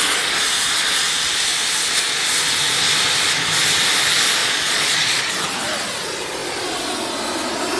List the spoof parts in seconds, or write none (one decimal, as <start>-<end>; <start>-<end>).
4.4-5.3